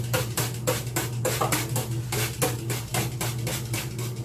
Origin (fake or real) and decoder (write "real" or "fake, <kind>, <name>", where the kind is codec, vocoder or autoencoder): real